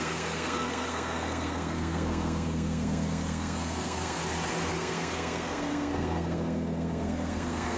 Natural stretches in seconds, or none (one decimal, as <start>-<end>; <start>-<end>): 4.2-4.7